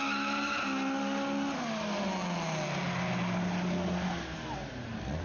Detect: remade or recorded recorded